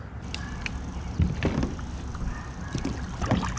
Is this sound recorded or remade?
recorded